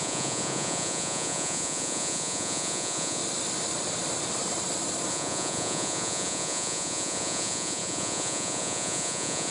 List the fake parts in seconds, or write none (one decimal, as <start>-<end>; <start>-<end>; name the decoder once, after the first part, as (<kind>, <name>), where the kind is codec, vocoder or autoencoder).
0.0-3.2 (vocoder, Vocos); 5.1-9.5